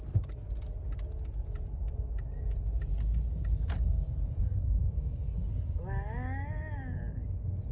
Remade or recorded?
recorded